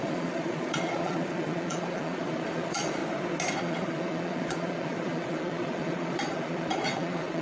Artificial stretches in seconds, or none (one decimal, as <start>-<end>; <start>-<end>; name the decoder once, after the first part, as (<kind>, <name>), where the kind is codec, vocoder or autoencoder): 0.0-3.0 (vocoder, Vocos); 3.6-7.4